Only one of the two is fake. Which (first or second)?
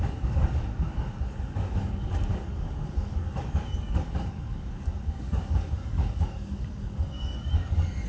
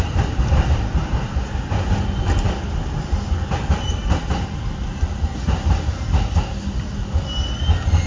first